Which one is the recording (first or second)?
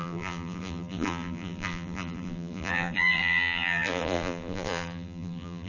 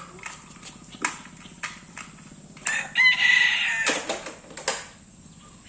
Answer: second